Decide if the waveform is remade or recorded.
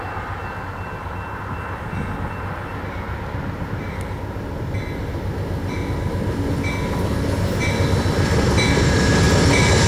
recorded